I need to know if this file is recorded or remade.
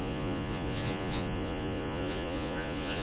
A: remade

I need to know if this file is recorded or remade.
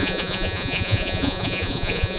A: remade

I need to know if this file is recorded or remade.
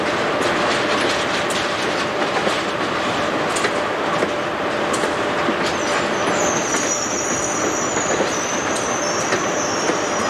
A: recorded